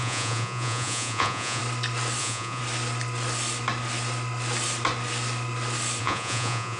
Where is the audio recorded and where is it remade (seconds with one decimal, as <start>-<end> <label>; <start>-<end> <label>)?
0.0-1.6 remade; 1.6-2.2 recorded; 2.2-2.6 remade; 2.6-6.0 recorded; 6.0-6.8 remade

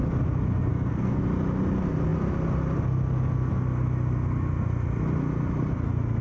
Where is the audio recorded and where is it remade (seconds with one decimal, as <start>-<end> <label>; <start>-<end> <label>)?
0.0-0.7 recorded; 0.7-1.2 remade; 1.2-6.2 recorded